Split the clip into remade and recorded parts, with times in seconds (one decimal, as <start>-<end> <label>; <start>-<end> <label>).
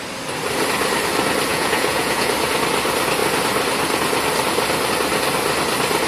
0.0-1.5 recorded; 1.5-2.3 remade; 2.3-6.1 recorded